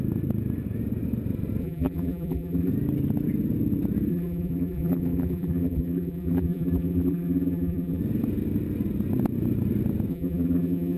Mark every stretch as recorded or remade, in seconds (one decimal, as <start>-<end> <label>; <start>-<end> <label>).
0.0-1.6 recorded; 1.6-2.7 remade; 2.7-4.1 recorded; 4.1-8.0 remade; 8.0-10.1 recorded; 10.1-11.0 remade